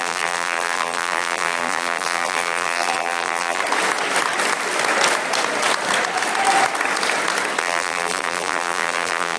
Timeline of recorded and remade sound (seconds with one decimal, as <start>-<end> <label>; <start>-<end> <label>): 0.0-3.6 remade; 3.6-7.6 recorded; 7.6-9.4 remade